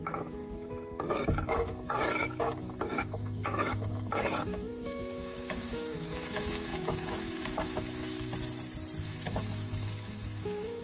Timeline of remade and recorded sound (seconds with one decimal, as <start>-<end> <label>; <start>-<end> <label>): 0.0-8.3 remade; 8.3-9.0 recorded; 9.0-10.8 remade